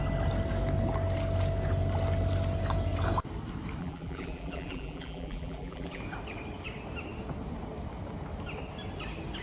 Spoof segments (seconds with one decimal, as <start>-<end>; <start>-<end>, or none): 3.8-6.0